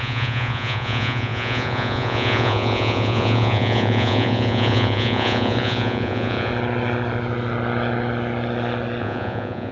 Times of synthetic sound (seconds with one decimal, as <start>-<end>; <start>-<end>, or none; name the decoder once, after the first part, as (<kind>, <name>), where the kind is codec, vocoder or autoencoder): 0.0-6.5 (vocoder, Vocos); 9.0-9.7

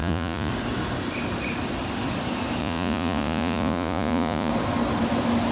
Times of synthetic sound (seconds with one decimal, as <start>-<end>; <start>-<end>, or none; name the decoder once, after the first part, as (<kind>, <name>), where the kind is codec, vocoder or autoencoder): 0.0-0.5 (vocoder, Vocos); 2.6-4.5

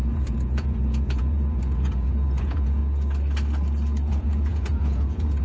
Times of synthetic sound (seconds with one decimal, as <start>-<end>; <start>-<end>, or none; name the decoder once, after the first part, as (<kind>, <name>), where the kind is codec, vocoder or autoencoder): 0.0-2.8 (vocoder, Vocos); 4.1-5.4

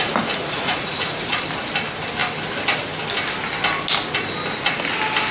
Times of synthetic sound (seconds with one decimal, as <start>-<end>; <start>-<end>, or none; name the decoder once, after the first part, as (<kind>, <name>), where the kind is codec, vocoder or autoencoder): 0.4-1.4 (vocoder, Vocos)

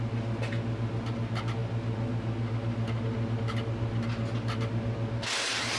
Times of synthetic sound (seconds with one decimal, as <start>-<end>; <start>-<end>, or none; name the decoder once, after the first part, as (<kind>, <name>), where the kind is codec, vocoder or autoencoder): none